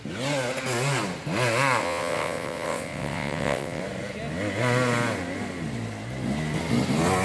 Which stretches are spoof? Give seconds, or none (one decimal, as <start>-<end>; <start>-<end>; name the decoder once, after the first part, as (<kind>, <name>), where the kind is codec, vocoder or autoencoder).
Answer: 1.8-3.8 (vocoder, WaveNeXt)